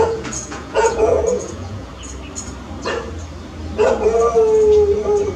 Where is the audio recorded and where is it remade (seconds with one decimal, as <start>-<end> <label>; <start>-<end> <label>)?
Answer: 0.0-1.9 remade; 1.9-5.4 recorded